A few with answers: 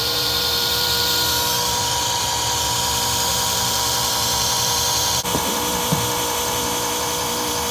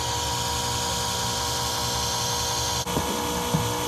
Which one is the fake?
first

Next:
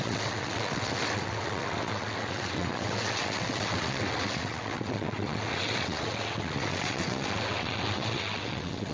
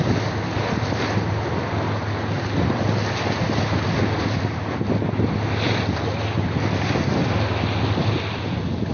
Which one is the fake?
first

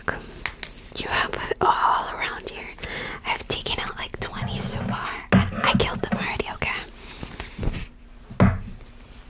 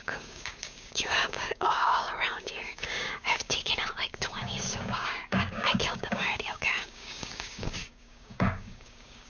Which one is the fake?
second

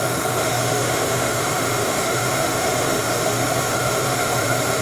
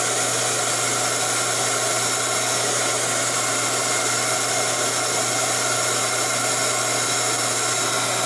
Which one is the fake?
first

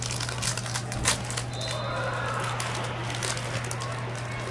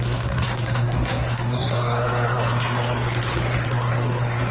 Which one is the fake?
second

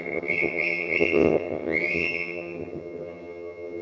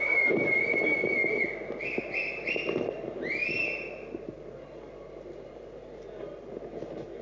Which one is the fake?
first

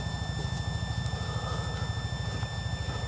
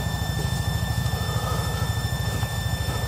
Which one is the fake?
second